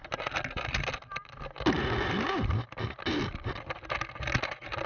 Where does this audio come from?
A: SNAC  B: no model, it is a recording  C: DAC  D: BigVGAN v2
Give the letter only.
B